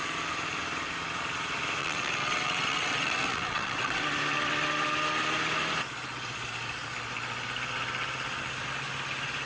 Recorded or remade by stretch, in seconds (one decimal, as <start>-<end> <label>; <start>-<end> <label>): 0.0-1.8 recorded; 1.8-4.0 remade; 4.0-9.5 recorded